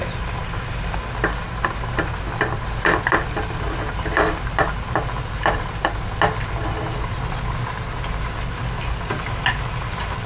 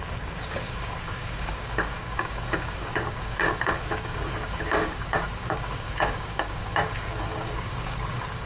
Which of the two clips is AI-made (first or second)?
second